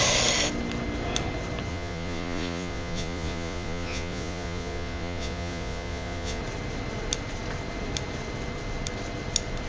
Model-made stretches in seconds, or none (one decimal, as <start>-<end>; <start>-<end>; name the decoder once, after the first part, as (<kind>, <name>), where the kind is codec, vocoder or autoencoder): 1.7-6.4 (vocoder, Vocos)